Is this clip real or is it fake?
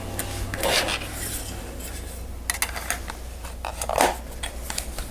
real